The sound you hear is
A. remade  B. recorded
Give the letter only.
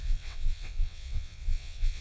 A